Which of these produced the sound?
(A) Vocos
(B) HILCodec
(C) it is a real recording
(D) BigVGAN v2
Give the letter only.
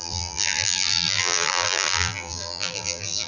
D